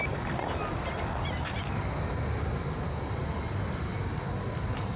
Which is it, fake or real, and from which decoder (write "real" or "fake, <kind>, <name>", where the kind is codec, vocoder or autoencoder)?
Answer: real